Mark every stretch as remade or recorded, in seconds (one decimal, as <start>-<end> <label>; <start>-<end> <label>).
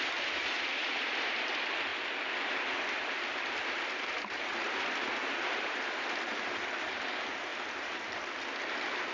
0.0-1.9 recorded; 1.9-5.7 remade; 5.7-7.5 recorded; 7.5-8.0 remade; 8.0-9.1 recorded